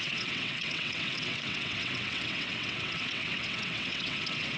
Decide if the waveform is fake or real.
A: fake